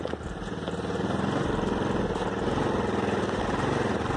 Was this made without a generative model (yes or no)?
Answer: yes